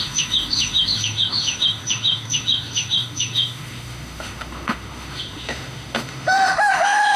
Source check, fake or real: fake